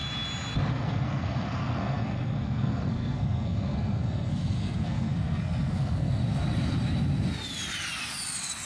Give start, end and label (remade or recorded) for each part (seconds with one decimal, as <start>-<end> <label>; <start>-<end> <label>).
0.0-0.7 recorded; 0.7-6.2 remade; 6.2-8.7 recorded